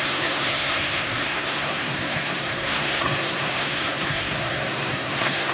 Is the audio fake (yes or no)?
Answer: yes